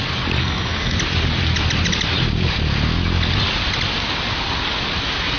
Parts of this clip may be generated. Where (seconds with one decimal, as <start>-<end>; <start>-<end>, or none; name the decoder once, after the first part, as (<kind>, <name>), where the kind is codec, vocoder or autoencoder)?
0.4-1.0 (codec, SNAC)